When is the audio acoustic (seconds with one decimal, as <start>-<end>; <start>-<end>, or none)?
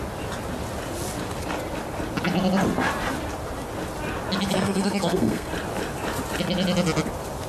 0.0-4.6; 5.5-7.5